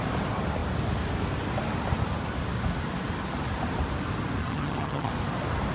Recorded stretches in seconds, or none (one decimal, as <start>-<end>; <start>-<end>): 0.0-4.4; 5.1-5.7